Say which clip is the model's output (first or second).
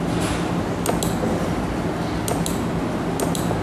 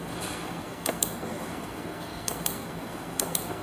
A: second